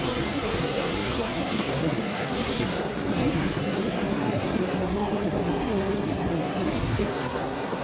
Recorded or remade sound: remade